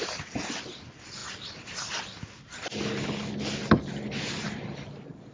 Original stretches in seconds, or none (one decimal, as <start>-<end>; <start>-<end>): 0.0-5.3